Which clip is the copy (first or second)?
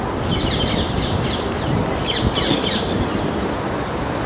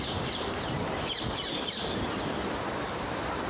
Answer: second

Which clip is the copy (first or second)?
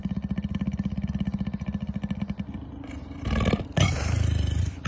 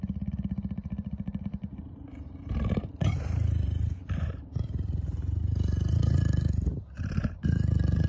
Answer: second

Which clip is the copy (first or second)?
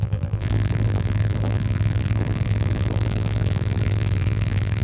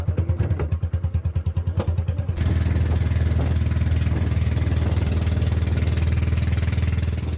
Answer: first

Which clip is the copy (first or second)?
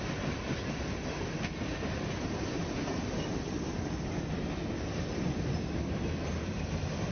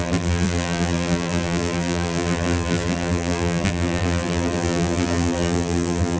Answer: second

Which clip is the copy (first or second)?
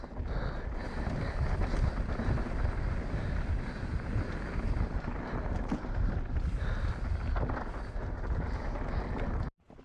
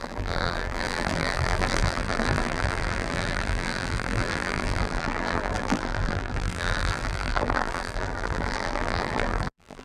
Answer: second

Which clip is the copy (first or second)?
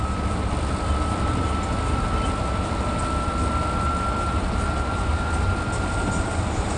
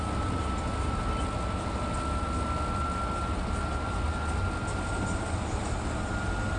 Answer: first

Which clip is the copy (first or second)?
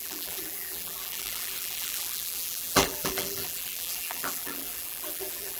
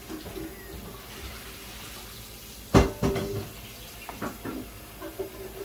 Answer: first